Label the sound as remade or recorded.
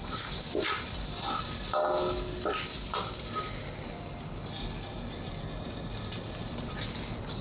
recorded